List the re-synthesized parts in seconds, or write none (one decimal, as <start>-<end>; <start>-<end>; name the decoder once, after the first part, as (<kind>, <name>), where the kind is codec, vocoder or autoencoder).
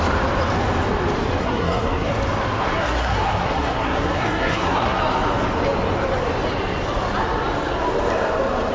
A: 1.4-2.1 (codec, SNAC); 2.6-5.0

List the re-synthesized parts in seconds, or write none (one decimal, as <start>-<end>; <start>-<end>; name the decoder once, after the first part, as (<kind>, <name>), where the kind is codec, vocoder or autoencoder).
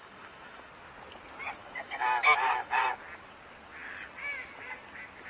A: 0.0-0.7 (autoencoder, DAC-VAE); 1.6-2.9